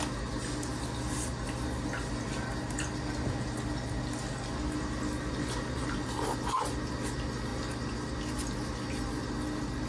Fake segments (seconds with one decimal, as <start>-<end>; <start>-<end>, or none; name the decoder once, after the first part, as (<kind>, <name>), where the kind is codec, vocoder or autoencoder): none